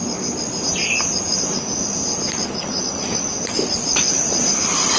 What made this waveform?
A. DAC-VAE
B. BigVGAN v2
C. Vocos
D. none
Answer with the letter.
D